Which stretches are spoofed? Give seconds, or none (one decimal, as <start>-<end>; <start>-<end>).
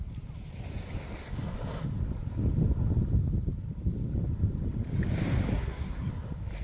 5.5-6.1